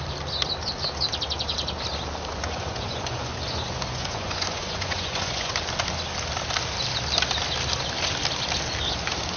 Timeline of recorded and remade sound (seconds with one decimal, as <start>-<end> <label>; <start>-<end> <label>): 0.0-2.3 recorded; 2.3-5.5 remade; 5.5-9.4 recorded